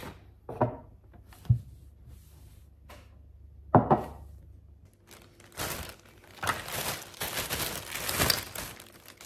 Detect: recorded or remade recorded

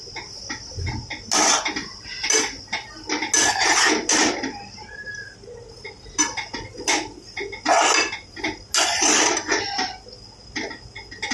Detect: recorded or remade recorded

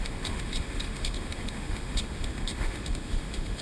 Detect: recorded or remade remade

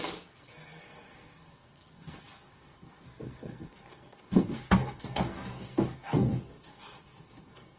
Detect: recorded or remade remade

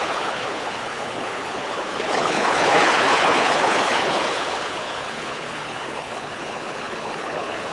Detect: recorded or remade remade